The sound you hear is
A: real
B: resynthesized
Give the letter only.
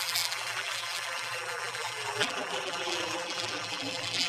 B